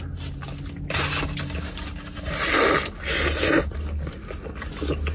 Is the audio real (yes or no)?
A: yes